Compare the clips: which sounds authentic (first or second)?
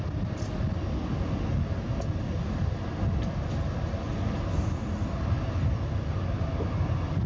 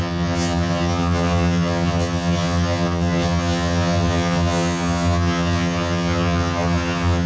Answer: first